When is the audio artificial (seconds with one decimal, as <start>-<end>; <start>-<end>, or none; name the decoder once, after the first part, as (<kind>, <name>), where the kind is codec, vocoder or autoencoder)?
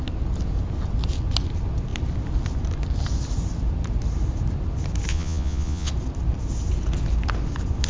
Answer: 5.1-5.9 (vocoder, Vocos)